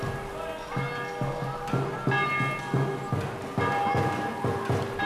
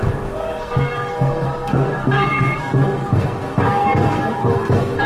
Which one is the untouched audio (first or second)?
first